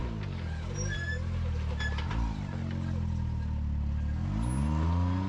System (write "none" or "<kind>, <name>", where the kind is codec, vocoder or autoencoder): none